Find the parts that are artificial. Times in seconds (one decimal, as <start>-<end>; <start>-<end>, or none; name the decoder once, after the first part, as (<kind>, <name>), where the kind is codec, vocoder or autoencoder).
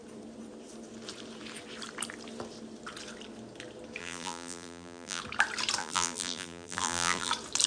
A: 4.0-5.2 (vocoder, BigVGAN v2); 5.8-7.3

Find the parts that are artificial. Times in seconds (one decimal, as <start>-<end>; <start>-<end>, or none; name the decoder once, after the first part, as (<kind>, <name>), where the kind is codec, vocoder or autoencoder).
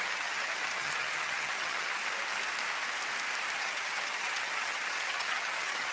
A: 0.0-2.0 (vocoder, HiFi-GAN); 3.6-5.9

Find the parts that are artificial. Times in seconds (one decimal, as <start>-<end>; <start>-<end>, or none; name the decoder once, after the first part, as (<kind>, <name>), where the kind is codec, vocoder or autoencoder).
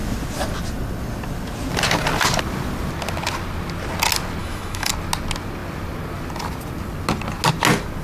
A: 4.4-4.9 (autoencoder, DAC-VAE)